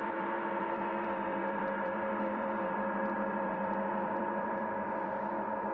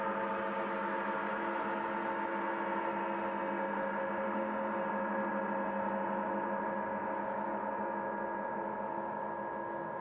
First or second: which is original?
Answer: second